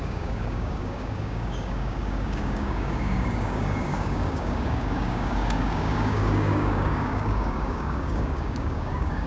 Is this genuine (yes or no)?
no